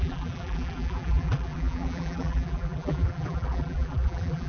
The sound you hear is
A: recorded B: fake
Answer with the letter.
B